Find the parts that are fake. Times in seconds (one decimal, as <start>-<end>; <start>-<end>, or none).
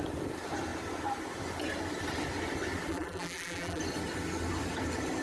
2.9-3.8